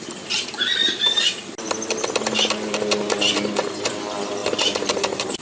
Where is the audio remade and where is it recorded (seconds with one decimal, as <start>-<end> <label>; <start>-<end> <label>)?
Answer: 0.0-4.4 recorded; 4.4-5.4 remade